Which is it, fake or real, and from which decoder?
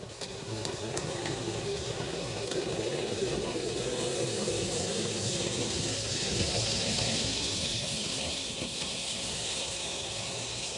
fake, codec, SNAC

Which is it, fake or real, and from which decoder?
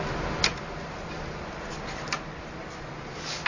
real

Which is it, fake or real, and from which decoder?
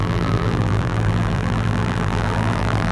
fake, vocoder, BigVGAN v2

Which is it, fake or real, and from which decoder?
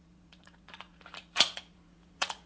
fake, vocoder, Vocos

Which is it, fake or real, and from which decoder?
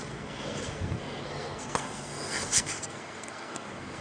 fake, codec, SNAC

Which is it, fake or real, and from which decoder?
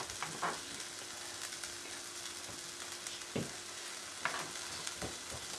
real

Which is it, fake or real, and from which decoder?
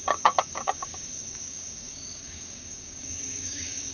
fake, codec, DAC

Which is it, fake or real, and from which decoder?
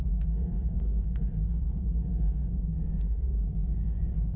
fake, codec, SNAC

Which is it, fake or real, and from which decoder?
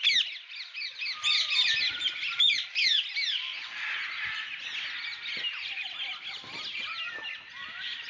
real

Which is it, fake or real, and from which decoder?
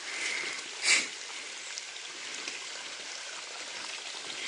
real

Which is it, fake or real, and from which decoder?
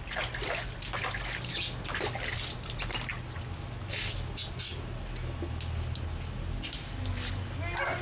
real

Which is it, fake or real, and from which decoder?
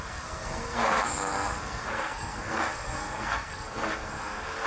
fake, codec, SNAC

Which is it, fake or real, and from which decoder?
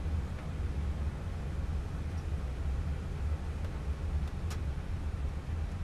real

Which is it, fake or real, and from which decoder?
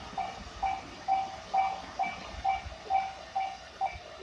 real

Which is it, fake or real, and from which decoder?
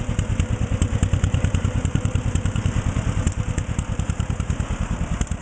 fake, vocoder, BigVGAN v2